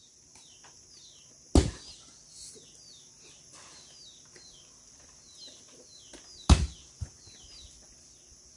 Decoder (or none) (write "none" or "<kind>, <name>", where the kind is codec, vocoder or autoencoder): none